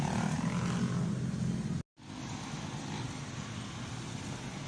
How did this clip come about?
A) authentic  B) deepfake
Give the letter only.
A